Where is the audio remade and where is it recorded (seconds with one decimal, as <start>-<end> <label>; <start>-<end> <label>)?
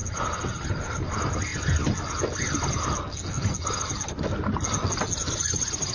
0.0-5.9 recorded